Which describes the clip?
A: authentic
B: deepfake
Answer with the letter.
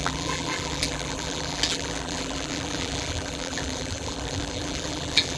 B